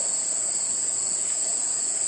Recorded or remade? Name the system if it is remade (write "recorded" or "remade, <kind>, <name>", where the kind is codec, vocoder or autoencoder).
remade, vocoder, Vocos